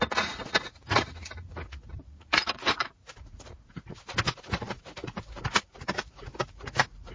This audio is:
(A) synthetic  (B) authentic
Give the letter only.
A